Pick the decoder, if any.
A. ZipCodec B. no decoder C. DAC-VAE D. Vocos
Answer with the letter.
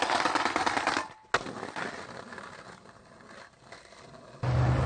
B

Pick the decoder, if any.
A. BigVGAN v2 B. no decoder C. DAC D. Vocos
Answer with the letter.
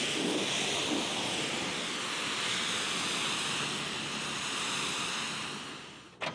B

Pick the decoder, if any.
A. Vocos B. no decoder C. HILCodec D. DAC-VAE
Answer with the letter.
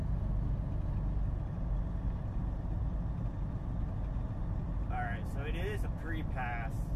B